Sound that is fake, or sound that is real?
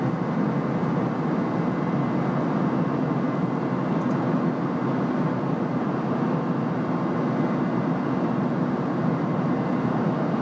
real